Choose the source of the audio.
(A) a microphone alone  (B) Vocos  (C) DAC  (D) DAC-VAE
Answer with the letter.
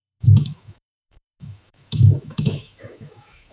D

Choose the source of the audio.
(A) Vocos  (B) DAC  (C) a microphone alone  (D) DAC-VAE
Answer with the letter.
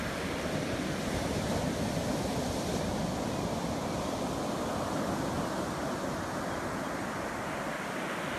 C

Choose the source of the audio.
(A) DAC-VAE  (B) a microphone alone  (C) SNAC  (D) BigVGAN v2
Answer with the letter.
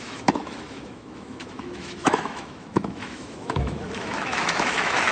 A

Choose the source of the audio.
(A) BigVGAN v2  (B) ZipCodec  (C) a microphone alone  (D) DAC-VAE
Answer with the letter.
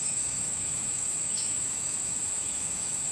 D